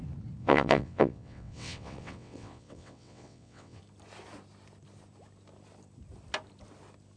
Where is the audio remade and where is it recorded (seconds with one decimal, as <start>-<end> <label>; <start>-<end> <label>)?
0.0-0.4 recorded; 0.4-3.8 remade; 3.8-7.2 recorded